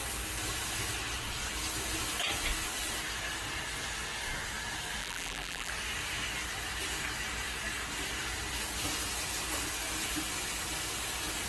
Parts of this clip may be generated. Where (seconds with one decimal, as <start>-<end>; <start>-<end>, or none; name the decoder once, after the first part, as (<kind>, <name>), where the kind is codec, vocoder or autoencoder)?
5.0-5.7 (vocoder, BigVGAN v2)